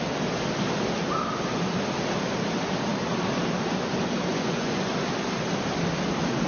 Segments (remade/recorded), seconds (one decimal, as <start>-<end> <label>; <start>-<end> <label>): 0.0-4.3 recorded; 4.3-4.9 remade; 4.9-6.5 recorded